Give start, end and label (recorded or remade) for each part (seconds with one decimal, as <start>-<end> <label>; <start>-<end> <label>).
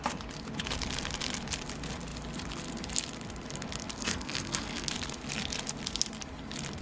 0.0-4.0 recorded; 4.0-4.9 remade; 4.9-6.8 recorded